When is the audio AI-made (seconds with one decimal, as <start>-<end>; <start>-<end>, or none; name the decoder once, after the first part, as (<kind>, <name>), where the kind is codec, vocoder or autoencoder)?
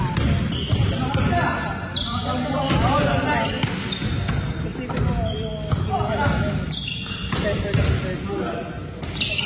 none